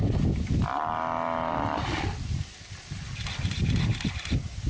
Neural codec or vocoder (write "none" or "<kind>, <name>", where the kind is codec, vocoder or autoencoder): none